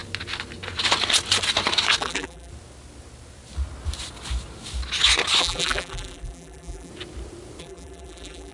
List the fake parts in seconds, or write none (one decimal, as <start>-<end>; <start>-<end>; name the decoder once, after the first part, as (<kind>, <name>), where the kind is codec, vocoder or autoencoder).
2.0-2.5 (vocoder, BigVGAN v2); 5.4-6.9; 7.6-8.5